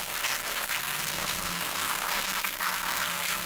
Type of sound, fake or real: fake